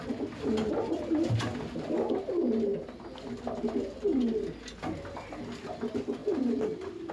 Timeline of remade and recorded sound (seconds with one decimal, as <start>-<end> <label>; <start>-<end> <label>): 0.0-7.1 recorded